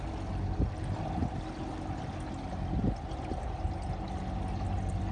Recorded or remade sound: recorded